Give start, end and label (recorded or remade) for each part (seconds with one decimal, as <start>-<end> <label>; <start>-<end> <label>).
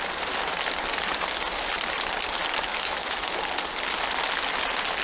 0.0-2.7 recorded; 2.7-3.4 remade; 3.4-5.0 recorded